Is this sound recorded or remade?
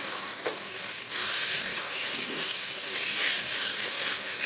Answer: remade